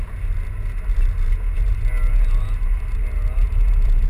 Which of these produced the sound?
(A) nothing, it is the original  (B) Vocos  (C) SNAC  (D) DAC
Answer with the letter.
A